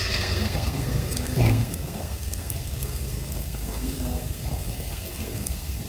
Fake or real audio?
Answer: fake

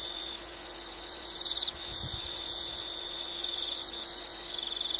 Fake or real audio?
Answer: fake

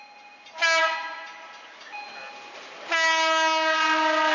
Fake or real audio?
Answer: real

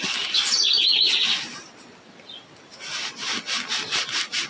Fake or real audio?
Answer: real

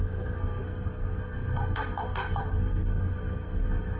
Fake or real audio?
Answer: fake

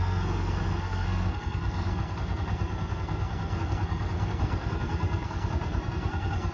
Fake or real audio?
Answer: fake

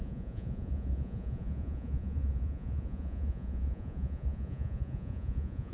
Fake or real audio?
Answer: fake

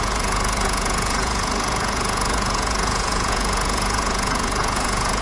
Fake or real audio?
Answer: fake